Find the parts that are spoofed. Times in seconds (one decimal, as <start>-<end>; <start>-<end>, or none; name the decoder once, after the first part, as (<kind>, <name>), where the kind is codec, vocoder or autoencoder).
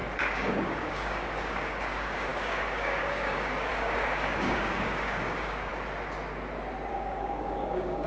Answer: 0.0-5.7 (codec, DAC); 6.9-8.1